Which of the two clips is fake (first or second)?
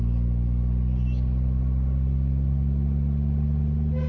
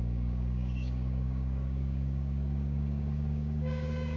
second